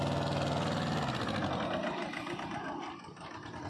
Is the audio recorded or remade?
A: recorded